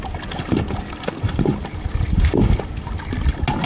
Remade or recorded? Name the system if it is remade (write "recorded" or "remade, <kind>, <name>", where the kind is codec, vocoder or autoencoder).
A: recorded